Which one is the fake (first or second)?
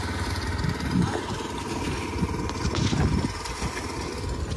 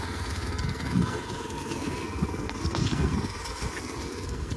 second